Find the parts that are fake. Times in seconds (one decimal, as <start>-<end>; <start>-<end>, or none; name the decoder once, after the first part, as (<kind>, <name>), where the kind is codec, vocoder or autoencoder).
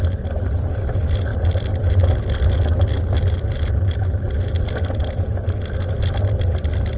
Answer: none